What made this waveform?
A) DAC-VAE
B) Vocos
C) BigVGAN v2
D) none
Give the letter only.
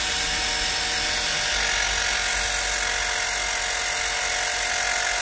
D